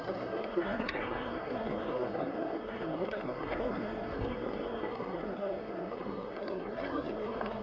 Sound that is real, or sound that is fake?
fake